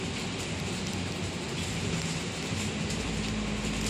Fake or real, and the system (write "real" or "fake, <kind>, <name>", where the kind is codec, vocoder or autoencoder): real